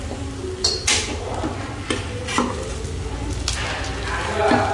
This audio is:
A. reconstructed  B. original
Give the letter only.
B